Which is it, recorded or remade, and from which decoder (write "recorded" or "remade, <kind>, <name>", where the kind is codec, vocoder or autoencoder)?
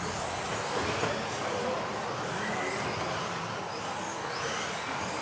recorded